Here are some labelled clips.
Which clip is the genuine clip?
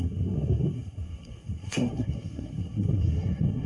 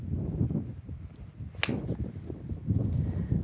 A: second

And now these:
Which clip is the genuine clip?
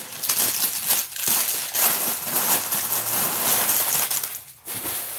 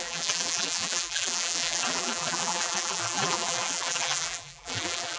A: first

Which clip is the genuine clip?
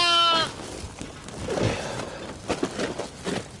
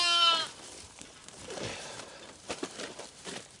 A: first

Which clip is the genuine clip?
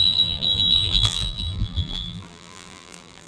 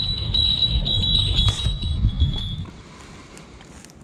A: second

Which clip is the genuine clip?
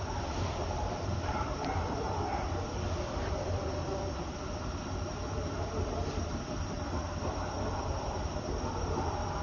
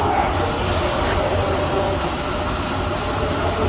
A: second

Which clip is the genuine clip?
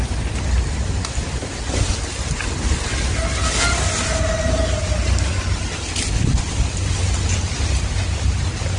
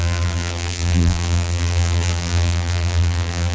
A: first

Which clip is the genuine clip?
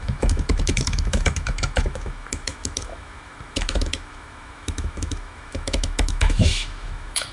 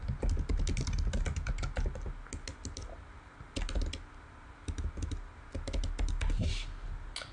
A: second